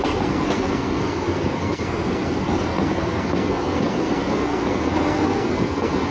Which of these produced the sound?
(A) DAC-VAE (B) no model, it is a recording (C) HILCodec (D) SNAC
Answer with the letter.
D